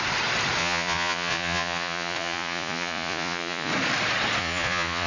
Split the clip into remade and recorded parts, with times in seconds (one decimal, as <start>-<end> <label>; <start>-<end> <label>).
0.0-0.6 recorded; 0.6-3.7 remade; 3.7-4.4 recorded; 4.4-5.1 remade